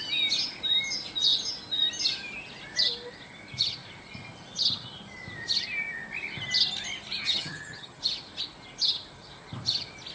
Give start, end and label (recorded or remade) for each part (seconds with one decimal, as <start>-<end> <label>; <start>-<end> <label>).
0.0-7.2 recorded; 7.2-8.0 remade; 8.0-10.1 recorded